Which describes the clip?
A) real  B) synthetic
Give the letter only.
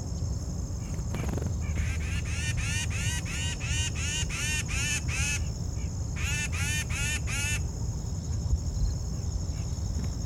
A